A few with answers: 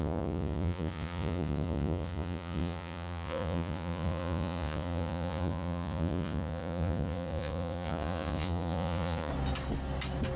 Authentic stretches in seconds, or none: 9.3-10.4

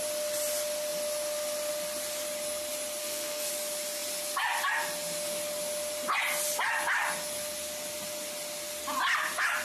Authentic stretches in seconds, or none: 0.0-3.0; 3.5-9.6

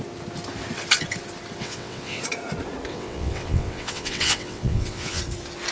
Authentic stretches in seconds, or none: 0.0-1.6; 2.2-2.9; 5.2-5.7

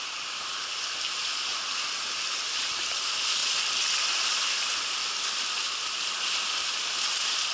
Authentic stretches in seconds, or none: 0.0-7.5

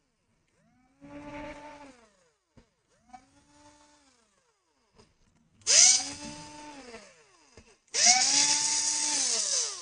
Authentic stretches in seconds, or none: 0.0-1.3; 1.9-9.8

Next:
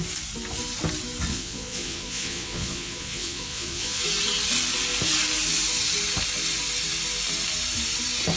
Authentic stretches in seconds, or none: 0.0-1.3; 4.0-8.4

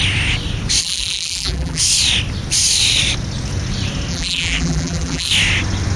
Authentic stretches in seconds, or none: 0.0-0.8; 1.8-4.1; 5.3-6.0

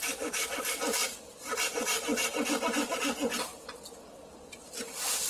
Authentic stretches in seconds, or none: 0.0-1.0; 1.5-5.3